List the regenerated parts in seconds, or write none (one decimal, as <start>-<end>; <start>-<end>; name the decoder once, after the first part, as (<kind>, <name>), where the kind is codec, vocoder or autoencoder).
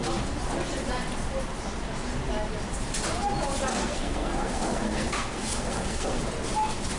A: 3.7-6.2 (codec, SNAC)